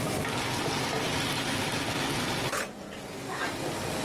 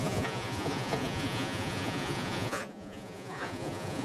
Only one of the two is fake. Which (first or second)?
second